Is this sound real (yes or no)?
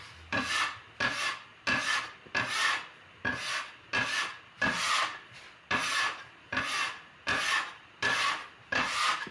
yes